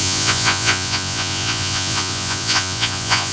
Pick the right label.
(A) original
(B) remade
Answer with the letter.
B